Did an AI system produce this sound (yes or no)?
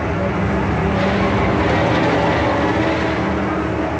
no